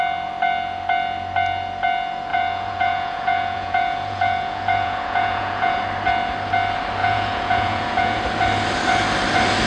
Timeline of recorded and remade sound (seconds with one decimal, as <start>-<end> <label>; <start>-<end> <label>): 0.0-2.3 recorded; 2.3-5.8 remade; 5.8-7.0 recorded; 7.0-8.2 remade; 8.2-9.7 recorded